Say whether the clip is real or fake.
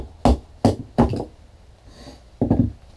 real